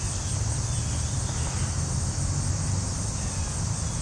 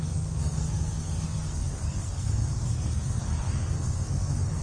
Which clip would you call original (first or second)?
first